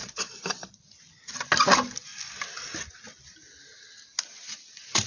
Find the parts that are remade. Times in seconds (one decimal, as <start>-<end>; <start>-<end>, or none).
0.0-0.7